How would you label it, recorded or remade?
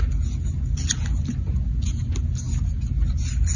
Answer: recorded